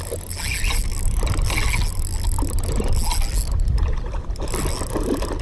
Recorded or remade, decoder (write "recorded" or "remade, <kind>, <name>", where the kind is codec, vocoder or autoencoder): recorded